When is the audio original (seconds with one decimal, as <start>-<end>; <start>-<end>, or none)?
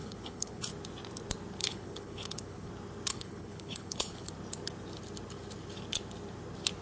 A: 0.7-1.6; 2.7-3.1; 4.3-6.8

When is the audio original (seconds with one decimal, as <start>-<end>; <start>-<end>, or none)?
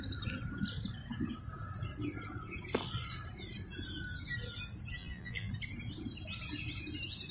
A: 0.0-5.0; 5.5-7.3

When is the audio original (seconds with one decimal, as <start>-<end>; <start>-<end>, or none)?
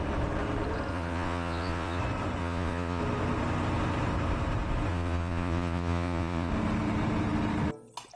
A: 0.0-0.9; 2.0-2.4; 3.0-4.9; 6.5-8.2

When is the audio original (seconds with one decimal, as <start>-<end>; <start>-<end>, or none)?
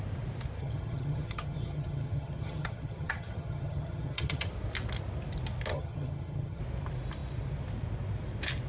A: 0.0-0.6; 4.5-5.7; 6.6-8.7